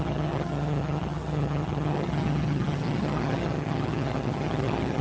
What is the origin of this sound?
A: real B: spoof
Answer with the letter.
B